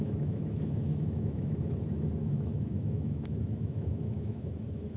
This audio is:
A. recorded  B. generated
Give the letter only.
B